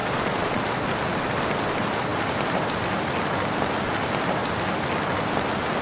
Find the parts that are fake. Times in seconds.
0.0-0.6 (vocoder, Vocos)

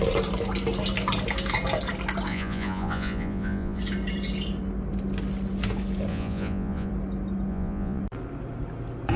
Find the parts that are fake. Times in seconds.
2.3-3.8 (vocoder, Vocos); 6.1-6.9; 7.5-8.0

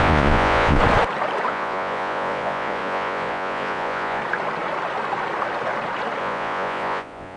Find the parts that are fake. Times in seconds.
0.0-0.8 (vocoder, Vocos); 1.5-4.2; 6.2-7.4

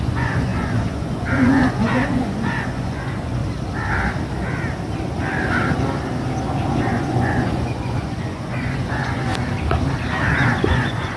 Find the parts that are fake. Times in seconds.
0.0-3.4 (vocoder, Vocos); 6.8-9.3; 10.3-11.2

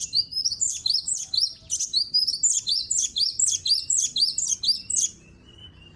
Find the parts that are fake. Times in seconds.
none

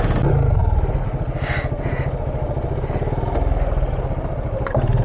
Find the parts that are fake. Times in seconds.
none

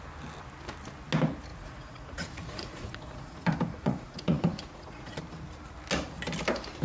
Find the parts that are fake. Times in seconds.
1.5-5.2 (vocoder, Vocos)

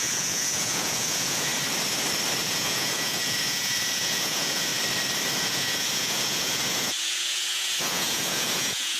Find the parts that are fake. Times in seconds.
0.0-1.5 (vocoder, Vocos); 2.4-4.7; 5.4-9.0